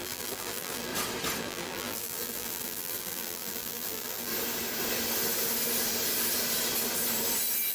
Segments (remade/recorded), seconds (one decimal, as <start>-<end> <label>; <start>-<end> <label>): 0.0-0.9 remade; 0.9-1.4 recorded; 1.4-4.3 remade; 4.3-7.7 recorded